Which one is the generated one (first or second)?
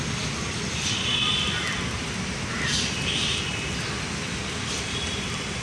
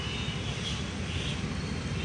first